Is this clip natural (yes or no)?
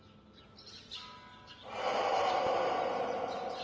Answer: yes